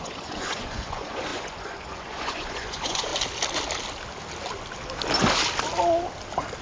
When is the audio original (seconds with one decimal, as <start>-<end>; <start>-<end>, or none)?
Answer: 3.1-6.6